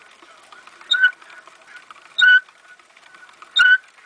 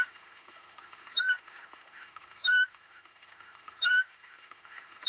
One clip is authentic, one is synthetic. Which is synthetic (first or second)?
second